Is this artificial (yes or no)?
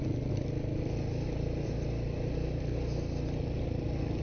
no